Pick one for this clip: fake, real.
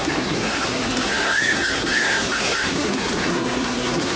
fake